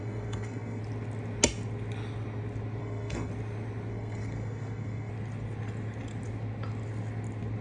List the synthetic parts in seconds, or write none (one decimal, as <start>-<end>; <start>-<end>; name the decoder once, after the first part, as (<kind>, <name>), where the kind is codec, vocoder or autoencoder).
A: 0.0-0.8 (codec, SNAC); 2.8-3.3; 3.9-5.1

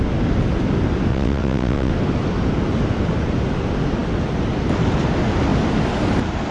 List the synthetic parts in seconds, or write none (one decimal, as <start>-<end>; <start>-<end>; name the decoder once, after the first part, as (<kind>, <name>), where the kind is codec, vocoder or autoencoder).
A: 1.1-1.9 (vocoder, WaveNeXt)

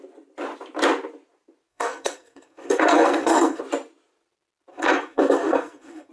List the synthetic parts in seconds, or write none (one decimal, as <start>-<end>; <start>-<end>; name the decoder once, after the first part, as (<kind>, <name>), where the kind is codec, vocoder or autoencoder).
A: 1.7-3.6 (codec, SNAC); 4.7-6.1

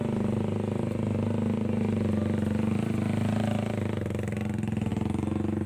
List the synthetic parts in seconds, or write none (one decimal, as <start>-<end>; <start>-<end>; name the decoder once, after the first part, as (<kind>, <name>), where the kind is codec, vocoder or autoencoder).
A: none

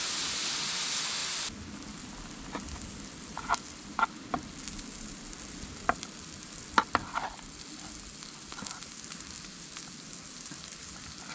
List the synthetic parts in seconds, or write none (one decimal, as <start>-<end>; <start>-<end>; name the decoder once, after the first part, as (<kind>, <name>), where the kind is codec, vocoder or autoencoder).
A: none